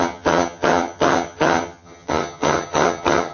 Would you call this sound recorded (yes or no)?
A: no